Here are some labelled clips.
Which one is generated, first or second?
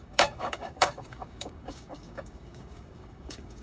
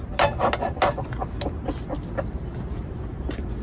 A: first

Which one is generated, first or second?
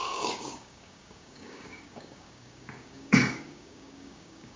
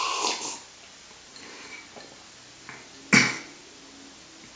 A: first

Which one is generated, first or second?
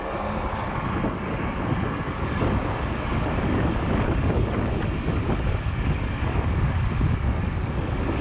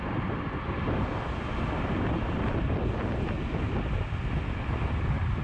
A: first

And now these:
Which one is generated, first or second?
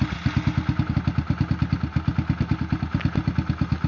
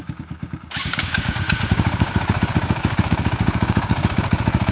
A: second